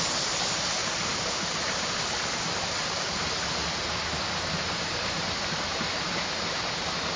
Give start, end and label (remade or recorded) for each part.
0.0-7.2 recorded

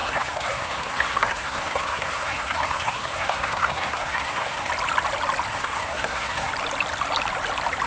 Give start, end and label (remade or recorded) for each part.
0.0-4.7 remade; 4.7-5.5 recorded; 5.5-6.5 remade; 6.5-7.9 recorded

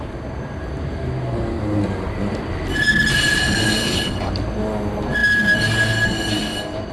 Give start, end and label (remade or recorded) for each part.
0.0-3.8 recorded; 3.8-4.3 remade; 4.3-6.9 recorded

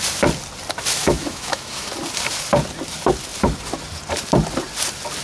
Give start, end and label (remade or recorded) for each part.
0.0-1.0 recorded; 1.0-1.9 remade; 1.9-5.2 recorded

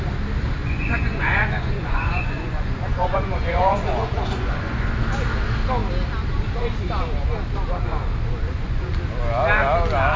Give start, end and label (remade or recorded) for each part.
0.0-0.6 recorded; 0.6-5.0 remade; 5.0-8.3 recorded; 8.3-8.9 remade; 8.9-10.2 recorded